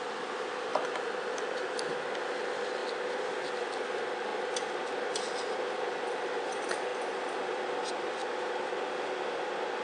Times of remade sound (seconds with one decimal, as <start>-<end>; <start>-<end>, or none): 0.0-2.8; 3.4-9.8